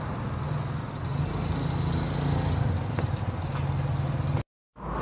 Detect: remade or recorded recorded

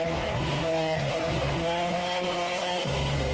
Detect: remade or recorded remade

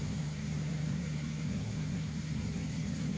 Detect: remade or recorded remade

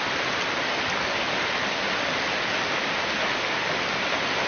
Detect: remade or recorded recorded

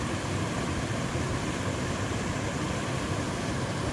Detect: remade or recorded recorded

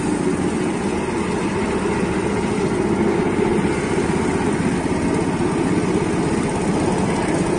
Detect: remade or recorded recorded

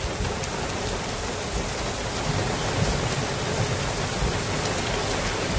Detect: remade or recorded recorded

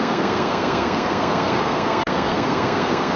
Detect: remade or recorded remade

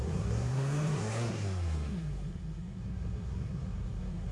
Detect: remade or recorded remade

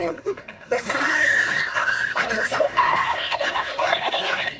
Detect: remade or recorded remade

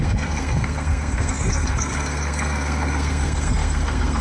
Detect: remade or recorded remade